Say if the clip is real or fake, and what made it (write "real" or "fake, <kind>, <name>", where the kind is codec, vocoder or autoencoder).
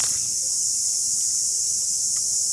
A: real